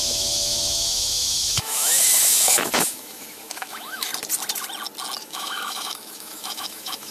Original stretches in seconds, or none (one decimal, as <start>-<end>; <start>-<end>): 4.1-5.2